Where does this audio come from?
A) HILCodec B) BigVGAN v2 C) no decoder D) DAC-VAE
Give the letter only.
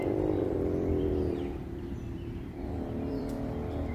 B